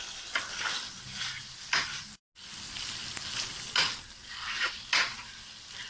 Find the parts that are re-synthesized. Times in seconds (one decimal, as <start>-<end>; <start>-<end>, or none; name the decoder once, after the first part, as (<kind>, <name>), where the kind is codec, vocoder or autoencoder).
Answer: none